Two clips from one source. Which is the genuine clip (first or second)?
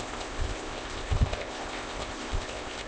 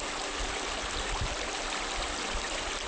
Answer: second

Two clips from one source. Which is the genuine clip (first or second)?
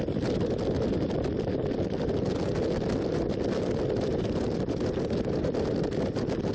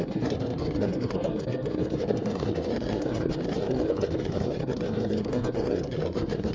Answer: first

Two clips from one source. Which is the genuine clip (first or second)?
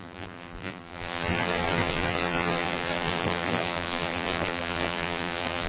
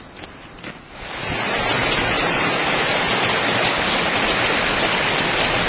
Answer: second